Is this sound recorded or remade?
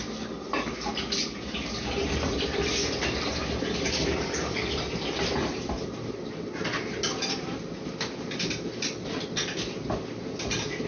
recorded